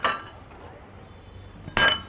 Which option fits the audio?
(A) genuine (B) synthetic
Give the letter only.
A